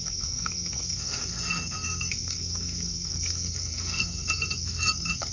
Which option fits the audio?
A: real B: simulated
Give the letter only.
B